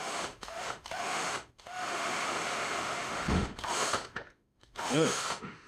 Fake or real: fake